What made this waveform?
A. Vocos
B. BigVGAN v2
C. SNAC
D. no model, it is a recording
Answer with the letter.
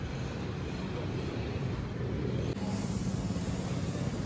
D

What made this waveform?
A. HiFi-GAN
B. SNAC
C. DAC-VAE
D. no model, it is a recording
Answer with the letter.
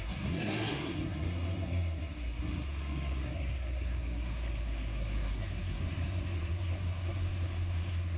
B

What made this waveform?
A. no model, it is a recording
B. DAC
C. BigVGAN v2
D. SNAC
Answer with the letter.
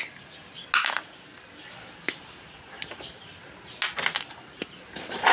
A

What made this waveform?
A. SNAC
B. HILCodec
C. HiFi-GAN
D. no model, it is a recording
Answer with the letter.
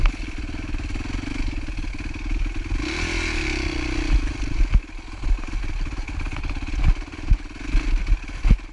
D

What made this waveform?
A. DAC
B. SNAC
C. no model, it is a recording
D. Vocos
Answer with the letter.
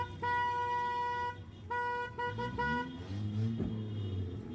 C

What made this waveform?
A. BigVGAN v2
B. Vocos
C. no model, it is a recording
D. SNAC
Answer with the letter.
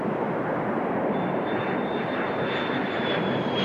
C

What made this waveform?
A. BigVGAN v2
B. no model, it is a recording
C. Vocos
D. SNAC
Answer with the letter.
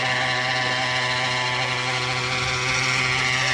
B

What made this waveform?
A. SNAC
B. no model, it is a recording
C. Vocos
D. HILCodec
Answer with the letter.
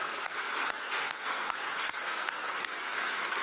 A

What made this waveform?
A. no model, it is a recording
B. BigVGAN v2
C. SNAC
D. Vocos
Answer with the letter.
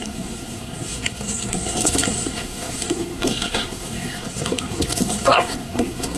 C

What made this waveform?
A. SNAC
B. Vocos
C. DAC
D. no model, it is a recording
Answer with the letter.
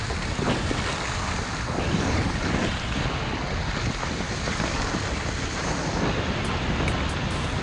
D